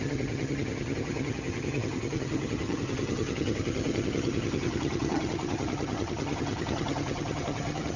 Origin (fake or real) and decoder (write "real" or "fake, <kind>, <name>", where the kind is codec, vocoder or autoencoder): fake, vocoder, HiFi-GAN